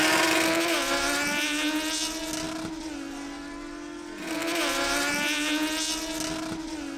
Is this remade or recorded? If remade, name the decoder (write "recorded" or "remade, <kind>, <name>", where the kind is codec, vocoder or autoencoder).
recorded